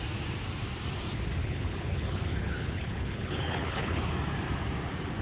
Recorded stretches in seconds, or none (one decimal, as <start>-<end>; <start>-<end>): 0.0-1.4; 4.0-5.2